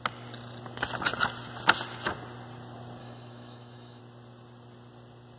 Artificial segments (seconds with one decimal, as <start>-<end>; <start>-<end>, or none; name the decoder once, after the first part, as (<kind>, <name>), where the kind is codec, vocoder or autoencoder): 3.0-4.0 (autoencoder, DAC-VAE)

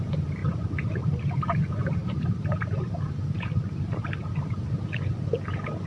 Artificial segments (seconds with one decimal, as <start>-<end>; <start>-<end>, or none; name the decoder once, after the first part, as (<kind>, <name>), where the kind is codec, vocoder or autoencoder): 0.4-1.4 (vocoder, BigVGAN v2); 2.0-4.4

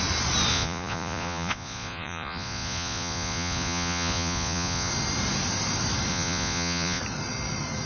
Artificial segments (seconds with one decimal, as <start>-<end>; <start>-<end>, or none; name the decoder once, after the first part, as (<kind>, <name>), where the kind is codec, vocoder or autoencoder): 0.5-4.9 (vocoder, Vocos); 6.1-7.0

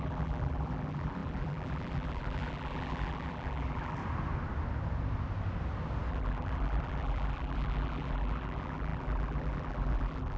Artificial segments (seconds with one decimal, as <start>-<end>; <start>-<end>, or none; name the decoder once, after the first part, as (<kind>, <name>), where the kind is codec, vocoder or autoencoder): 0.0-4.0 (vocoder, BigVGAN v2); 6.1-10.4

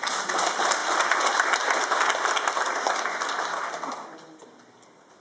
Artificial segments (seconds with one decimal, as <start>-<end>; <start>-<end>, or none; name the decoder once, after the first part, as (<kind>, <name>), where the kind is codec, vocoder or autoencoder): none

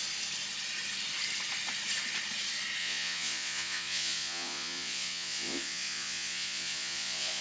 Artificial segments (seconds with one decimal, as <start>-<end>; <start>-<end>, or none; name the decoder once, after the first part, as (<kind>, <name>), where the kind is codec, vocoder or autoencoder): 2.8-7.4 (vocoder, Vocos)